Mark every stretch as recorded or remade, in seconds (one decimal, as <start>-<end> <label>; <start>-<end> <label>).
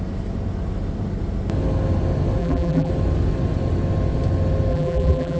0.0-2.4 recorded; 2.4-2.9 remade; 2.9-4.7 recorded; 4.7-5.4 remade